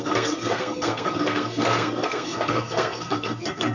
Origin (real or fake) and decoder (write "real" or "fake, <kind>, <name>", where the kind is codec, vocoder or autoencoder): fake, codec, SNAC